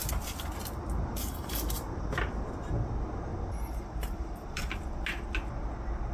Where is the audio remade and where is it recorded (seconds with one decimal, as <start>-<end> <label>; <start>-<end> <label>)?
0.0-3.3 recorded; 3.3-4.8 remade; 4.8-6.1 recorded